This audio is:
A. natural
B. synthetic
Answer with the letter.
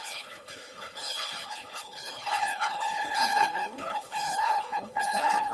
B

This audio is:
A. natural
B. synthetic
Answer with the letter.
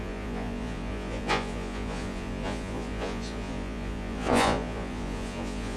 B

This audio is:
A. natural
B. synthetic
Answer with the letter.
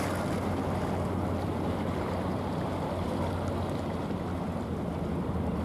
A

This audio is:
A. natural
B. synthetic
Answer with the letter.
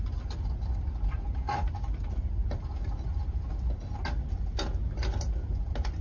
A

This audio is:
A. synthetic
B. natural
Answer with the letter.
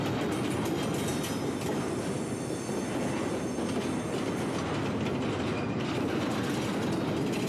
B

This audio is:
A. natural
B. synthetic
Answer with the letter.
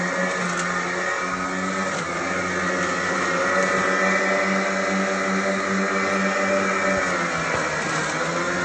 A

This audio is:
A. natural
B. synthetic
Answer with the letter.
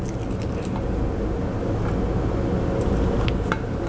A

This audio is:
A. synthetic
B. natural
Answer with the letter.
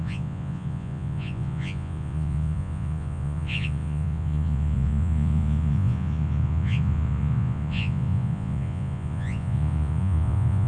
A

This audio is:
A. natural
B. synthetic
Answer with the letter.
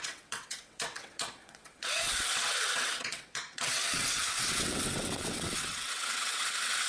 B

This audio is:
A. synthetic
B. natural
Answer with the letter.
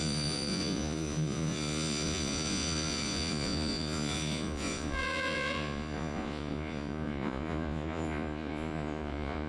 A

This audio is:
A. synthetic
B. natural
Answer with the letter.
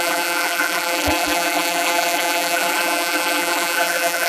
A